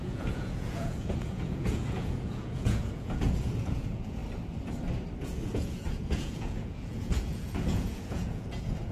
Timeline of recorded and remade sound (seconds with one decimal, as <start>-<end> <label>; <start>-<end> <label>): 0.0-4.2 remade; 4.2-5.2 recorded; 5.2-8.9 remade